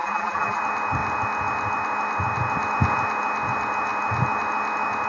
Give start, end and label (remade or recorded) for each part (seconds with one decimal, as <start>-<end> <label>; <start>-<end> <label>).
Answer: 0.0-0.6 remade; 0.6-5.1 recorded